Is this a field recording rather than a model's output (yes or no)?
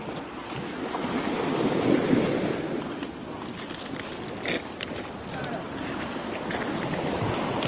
yes